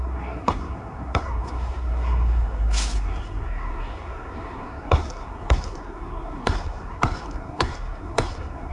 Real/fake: fake